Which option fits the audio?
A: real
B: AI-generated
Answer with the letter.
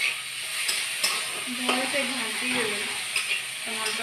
A